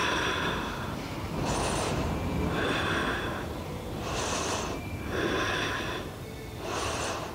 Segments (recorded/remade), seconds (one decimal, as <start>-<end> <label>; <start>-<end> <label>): 0.0-4.1 remade; 4.1-7.3 recorded